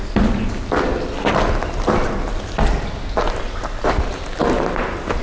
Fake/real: real